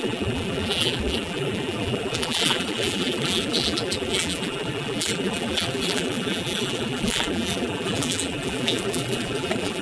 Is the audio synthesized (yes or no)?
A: yes